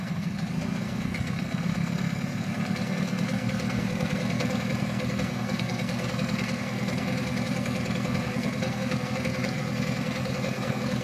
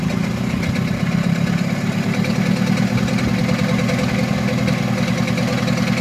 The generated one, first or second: first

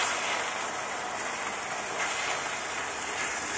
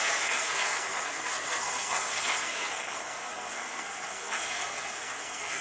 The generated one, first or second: second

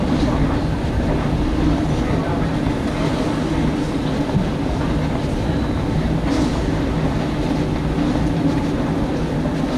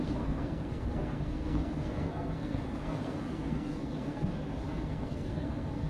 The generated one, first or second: second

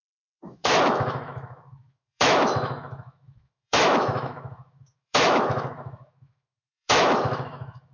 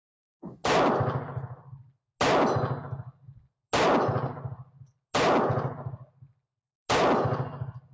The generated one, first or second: first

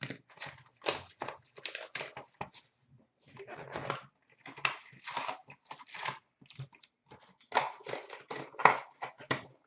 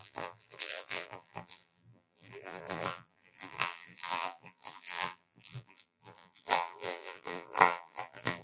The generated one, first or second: second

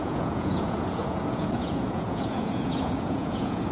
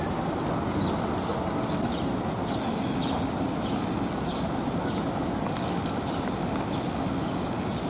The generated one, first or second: first